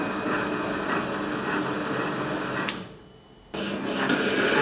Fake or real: real